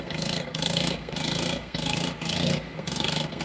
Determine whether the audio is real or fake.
fake